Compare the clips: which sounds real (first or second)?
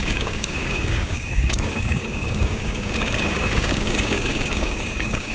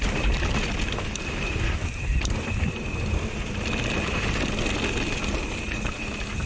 second